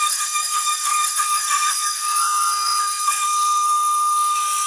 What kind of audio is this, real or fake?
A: fake